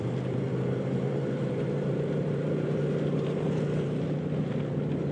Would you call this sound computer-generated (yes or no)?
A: yes